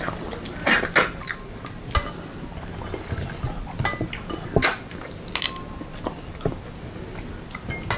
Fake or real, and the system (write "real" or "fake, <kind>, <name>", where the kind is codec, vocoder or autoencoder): real